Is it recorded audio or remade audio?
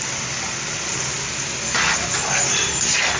recorded